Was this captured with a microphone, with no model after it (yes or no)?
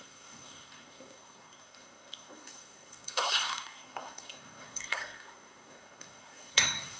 no